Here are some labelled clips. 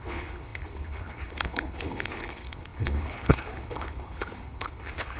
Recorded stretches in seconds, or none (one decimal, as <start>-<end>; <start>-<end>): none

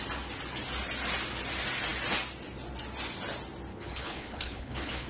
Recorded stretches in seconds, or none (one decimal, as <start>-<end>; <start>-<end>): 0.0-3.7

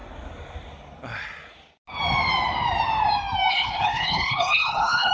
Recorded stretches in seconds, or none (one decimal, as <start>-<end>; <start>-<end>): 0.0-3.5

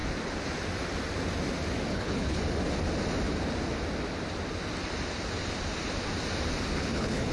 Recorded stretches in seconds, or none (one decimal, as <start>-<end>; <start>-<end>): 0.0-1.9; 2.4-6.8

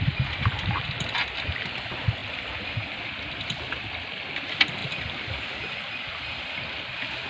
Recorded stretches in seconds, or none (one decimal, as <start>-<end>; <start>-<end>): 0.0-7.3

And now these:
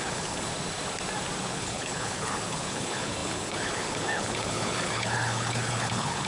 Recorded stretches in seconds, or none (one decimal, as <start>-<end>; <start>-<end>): 0.5-1.4